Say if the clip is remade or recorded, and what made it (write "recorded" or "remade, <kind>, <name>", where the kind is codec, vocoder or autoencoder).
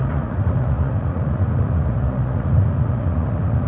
remade, vocoder, Vocos